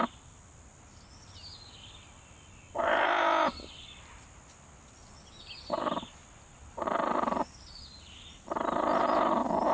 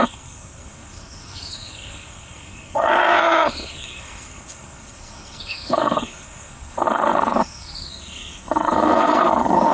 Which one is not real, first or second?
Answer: second